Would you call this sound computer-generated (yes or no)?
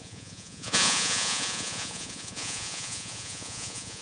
yes